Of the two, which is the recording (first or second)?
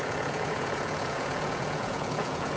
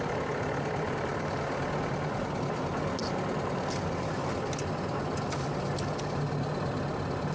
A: second